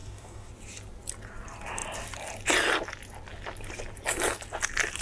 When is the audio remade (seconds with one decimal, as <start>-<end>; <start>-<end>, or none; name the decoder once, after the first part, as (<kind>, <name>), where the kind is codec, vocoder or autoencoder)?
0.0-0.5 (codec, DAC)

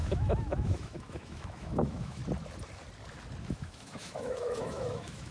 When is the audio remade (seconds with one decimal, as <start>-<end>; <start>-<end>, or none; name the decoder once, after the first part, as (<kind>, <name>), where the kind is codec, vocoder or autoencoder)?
0.0-2.2 (autoencoder, DAC-VAE); 3.4-5.3

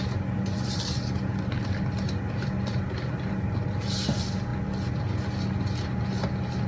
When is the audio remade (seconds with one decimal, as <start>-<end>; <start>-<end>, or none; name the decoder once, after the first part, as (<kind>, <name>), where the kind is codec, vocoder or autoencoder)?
none